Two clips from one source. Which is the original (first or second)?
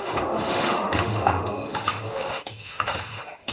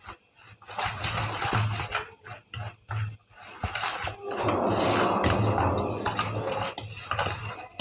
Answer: second